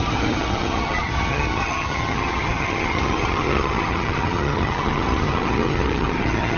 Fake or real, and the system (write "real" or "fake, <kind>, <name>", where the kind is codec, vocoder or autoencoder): fake, vocoder, HiFi-GAN